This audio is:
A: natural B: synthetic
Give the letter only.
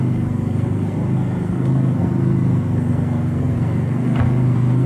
B